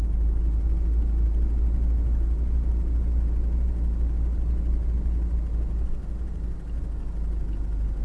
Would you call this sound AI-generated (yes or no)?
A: no